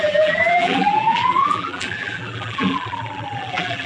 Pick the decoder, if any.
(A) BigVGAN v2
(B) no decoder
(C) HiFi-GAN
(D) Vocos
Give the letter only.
A